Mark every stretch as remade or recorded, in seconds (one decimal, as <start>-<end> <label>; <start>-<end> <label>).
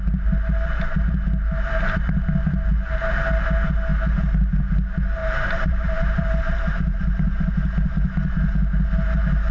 0.0-5.2 recorded; 5.2-7.5 remade; 7.5-9.5 recorded